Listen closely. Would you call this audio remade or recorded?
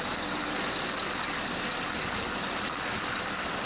recorded